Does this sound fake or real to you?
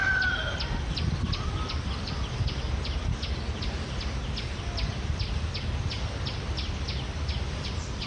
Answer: real